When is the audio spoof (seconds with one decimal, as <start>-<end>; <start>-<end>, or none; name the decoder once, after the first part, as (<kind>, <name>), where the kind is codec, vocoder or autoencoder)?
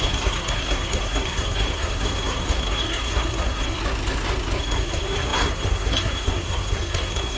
0.0-3.8 (codec, SNAC); 4.6-7.4